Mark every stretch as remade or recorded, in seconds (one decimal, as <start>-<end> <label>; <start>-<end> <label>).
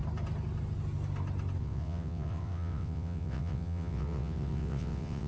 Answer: 0.0-1.6 recorded; 1.6-5.3 remade